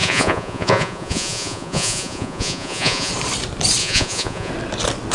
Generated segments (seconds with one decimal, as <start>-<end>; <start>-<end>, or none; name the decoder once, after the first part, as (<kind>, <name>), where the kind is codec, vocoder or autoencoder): 0.0-3.1 (vocoder, Vocos); 3.8-4.5